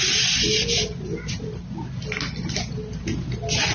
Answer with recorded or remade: recorded